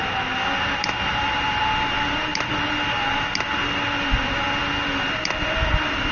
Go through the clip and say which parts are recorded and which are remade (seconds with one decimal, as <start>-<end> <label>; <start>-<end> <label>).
0.0-6.1 recorded